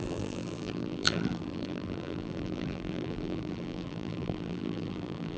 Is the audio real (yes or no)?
no